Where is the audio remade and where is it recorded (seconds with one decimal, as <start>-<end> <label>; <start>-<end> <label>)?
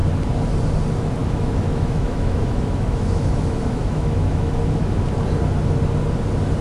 0.0-1.2 recorded; 1.2-5.0 remade; 5.0-6.6 recorded